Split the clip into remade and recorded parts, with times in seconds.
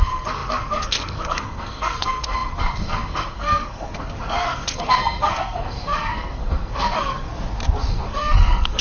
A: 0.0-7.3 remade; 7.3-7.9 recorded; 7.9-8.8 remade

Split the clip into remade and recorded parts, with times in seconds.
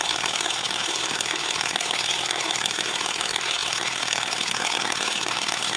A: 0.0-5.8 remade